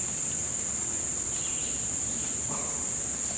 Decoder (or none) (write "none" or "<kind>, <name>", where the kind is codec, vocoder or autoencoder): none